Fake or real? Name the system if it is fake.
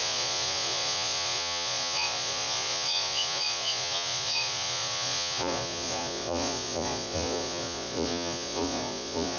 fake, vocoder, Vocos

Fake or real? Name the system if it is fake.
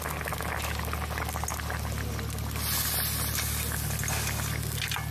real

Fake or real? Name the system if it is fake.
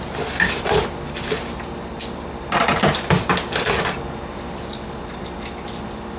real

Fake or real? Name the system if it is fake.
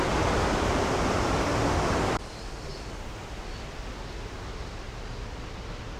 real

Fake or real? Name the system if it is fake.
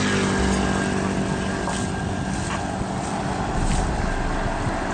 real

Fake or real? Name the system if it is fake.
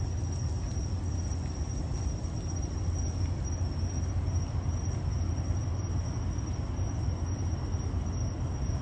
real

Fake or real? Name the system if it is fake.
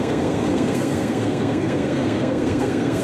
fake, codec, SNAC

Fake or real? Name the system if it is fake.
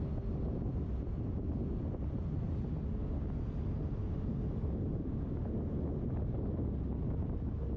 real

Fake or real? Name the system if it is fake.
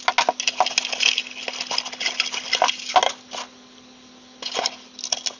real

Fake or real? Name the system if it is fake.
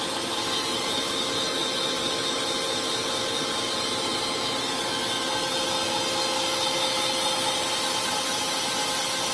real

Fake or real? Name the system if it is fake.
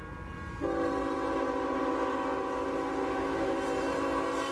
real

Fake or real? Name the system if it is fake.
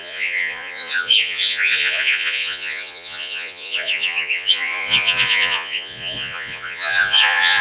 fake, vocoder, Vocos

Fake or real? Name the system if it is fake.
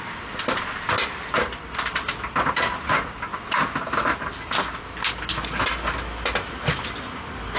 real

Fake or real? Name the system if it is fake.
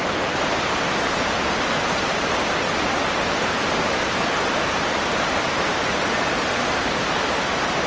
fake, vocoder, BigVGAN v2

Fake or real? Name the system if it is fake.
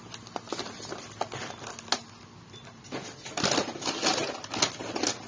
real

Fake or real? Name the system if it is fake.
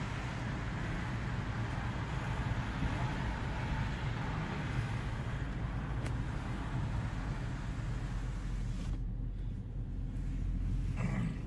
real